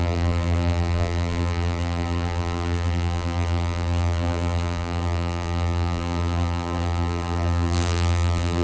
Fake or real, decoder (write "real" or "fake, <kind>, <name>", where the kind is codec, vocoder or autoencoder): fake, vocoder, BigVGAN v2